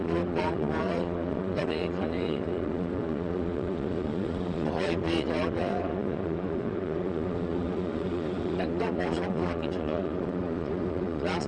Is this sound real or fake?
fake